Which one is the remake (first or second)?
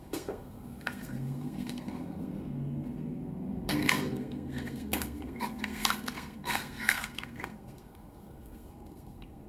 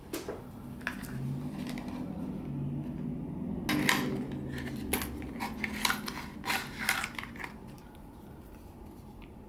first